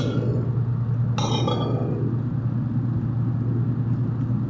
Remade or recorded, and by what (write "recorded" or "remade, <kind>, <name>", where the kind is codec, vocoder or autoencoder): recorded